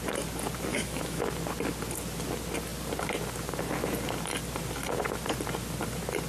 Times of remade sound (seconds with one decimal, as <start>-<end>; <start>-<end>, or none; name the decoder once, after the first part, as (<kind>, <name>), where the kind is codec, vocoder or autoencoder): 0.7-1.2 (autoencoder, DAC-VAE)